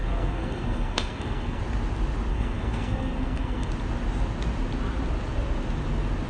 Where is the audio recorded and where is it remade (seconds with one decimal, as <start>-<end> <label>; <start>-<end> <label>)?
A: 0.0-1.6 remade; 1.6-2.3 recorded; 2.3-3.7 remade; 3.7-6.3 recorded